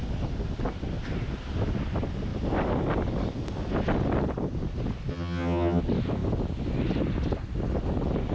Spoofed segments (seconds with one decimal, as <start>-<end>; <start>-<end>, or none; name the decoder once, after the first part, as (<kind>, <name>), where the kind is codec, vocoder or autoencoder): 5.1-5.8 (vocoder, HiFi-GAN)